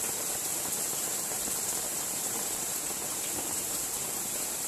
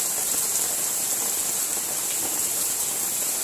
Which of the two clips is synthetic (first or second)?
first